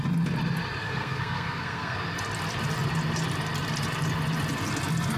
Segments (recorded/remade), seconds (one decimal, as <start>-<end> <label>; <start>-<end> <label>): 0.0-0.8 recorded; 0.8-2.0 remade; 2.0-5.2 recorded